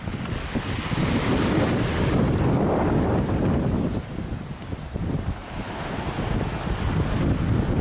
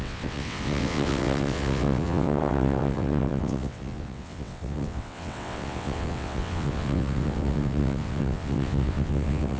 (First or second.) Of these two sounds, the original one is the first